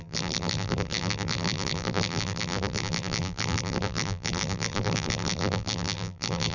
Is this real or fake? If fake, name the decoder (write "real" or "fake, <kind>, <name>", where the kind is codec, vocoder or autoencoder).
fake, vocoder, BigVGAN v2